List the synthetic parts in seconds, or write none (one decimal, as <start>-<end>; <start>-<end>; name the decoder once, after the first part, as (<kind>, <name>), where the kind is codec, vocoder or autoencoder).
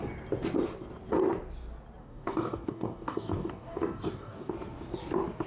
2.0-4.5 (codec, DAC)